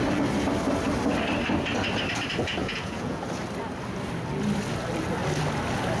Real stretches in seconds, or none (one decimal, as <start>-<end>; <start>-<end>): 0.0-2.6; 3.2-6.0